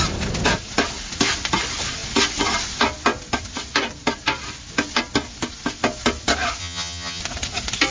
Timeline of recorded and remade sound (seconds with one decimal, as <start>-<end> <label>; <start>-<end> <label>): 0.0-6.6 recorded; 6.6-7.2 remade; 7.2-7.9 recorded